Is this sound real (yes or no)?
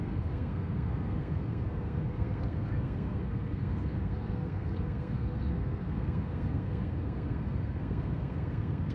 no